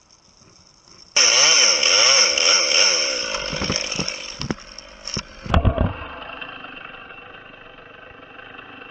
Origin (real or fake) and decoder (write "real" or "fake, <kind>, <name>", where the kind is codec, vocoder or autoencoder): real